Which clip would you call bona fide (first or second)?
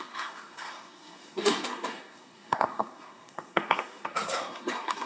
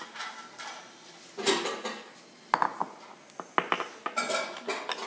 second